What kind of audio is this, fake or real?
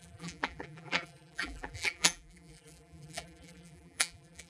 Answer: fake